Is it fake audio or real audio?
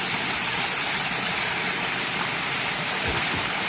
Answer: real